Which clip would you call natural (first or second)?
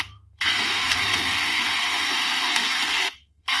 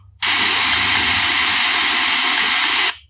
second